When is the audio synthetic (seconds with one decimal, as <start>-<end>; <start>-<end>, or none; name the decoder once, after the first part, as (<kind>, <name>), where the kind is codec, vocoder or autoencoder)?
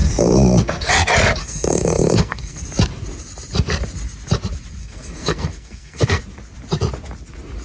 0.0-0.9 (codec, SNAC); 1.4-2.6; 4.8-6.2